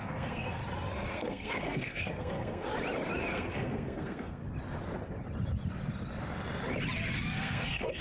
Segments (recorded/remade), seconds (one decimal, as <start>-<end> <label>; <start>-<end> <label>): 0.0-0.6 remade; 0.6-1.1 recorded; 1.1-2.7 remade; 2.7-3.3 recorded; 3.3-4.4 remade; 4.4-7.4 recorded; 7.4-8.0 remade